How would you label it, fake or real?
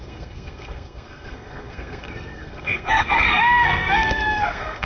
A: fake